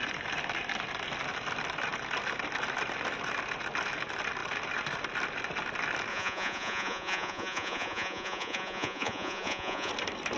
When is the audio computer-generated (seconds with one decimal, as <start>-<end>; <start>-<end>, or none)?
6.1-9.9